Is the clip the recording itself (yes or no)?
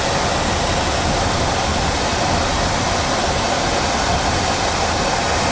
yes